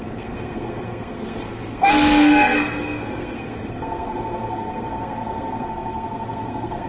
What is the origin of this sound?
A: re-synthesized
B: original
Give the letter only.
A